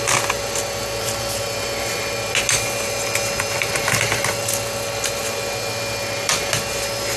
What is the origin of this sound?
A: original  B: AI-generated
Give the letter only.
A